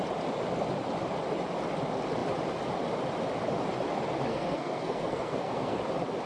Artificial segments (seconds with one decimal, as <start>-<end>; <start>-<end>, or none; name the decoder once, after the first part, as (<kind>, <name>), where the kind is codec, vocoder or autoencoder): 4.3-5.8 (codec, SNAC)